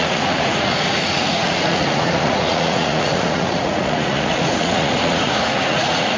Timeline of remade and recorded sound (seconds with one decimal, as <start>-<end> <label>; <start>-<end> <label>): 0.0-6.2 remade